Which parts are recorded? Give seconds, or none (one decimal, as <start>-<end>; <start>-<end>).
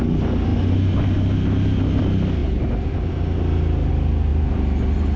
0.0-5.2